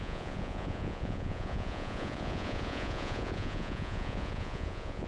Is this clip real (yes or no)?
no